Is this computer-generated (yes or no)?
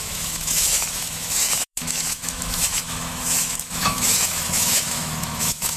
yes